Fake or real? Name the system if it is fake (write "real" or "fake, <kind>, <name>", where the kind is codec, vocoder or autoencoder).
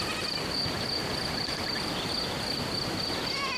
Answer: real